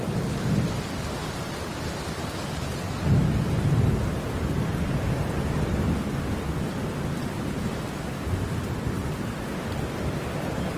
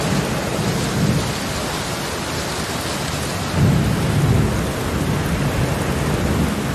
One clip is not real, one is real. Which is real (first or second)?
second